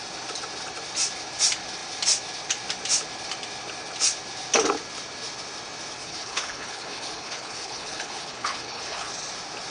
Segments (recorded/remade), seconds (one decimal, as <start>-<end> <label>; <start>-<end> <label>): 0.0-6.0 recorded; 6.0-9.1 remade; 9.1-9.7 recorded